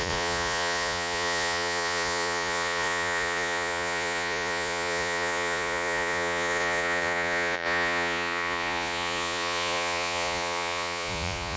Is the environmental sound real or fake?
fake